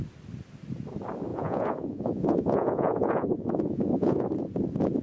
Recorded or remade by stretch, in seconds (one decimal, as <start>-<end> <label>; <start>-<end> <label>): 0.0-1.3 recorded; 1.3-4.3 remade; 4.3-5.0 recorded